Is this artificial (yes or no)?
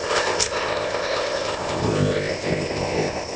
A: yes